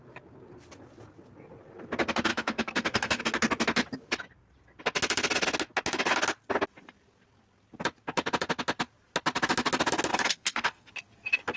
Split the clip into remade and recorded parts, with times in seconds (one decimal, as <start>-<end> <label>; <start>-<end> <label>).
0.0-2.3 recorded; 2.3-3.2 remade; 3.2-10.1 recorded; 10.1-10.9 remade; 10.9-11.6 recorded